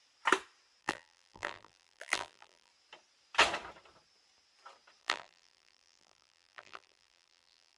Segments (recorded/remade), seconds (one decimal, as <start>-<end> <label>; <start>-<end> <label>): 0.0-0.8 recorded; 0.8-2.7 remade; 2.7-5.0 recorded; 5.0-7.8 remade